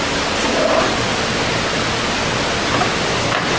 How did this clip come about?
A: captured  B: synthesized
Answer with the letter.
A